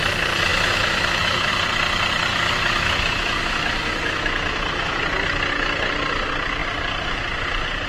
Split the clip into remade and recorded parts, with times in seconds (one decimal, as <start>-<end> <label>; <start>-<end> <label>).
0.0-0.5 recorded; 0.5-1.5 remade; 1.5-2.3 recorded; 2.3-5.0 remade; 5.0-7.9 recorded